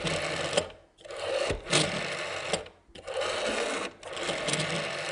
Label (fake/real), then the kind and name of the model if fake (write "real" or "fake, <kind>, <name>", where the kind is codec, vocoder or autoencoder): real